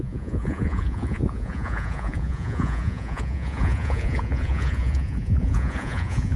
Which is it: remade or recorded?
remade